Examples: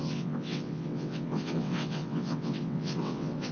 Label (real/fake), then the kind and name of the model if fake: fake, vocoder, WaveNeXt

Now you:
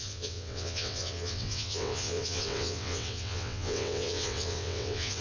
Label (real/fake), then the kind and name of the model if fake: fake, vocoder, WaveNeXt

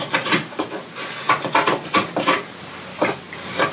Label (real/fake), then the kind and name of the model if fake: real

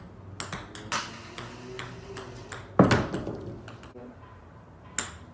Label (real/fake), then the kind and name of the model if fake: real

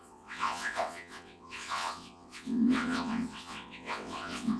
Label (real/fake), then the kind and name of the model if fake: fake, vocoder, WaveNeXt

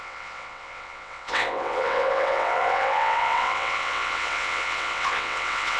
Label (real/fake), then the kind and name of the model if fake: fake, vocoder, WaveNeXt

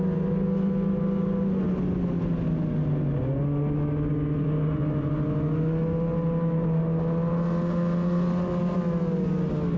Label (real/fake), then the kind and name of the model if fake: real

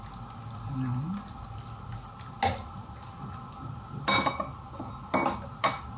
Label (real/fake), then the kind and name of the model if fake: real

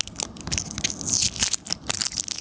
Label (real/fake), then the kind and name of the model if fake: real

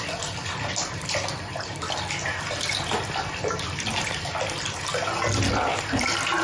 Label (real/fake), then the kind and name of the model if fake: real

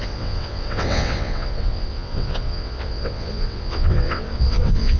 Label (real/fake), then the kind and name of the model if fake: fake, vocoder, WaveNeXt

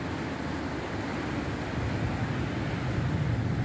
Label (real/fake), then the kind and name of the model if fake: real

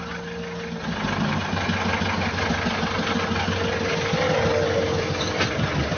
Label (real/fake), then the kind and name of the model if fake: real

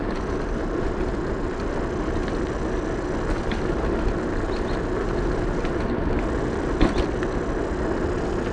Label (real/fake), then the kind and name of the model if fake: real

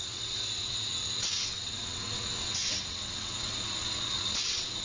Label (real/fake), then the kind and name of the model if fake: fake, vocoder, WaveNeXt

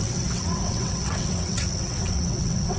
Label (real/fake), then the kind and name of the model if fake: fake, vocoder, WaveNeXt